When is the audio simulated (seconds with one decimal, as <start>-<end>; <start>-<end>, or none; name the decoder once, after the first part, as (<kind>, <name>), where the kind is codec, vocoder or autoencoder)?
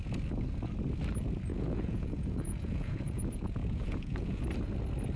1.5-4.4 (vocoder, Vocos)